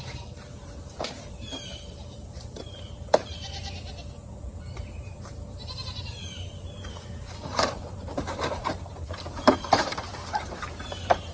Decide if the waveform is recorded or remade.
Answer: remade